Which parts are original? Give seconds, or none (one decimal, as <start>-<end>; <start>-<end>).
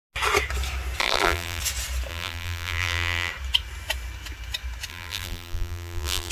0.0-1.0; 1.6-2.1; 3.3-4.9